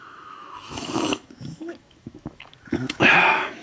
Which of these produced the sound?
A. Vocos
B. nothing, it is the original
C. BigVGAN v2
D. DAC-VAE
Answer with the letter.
D